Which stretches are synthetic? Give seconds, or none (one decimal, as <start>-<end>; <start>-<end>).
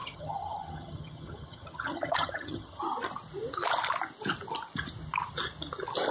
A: 0.0-2.8